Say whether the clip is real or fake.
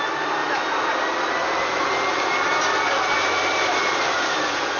real